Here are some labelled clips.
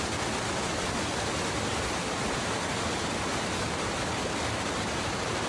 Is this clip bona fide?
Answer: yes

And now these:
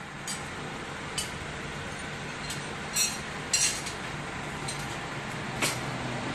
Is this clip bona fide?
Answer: yes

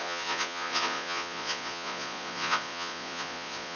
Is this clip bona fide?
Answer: no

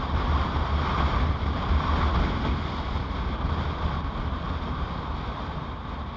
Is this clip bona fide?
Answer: yes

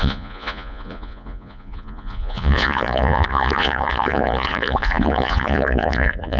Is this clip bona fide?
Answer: no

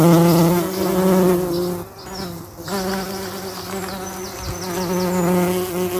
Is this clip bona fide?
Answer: yes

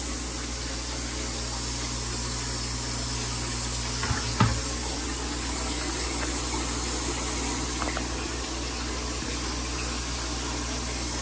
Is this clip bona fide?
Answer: yes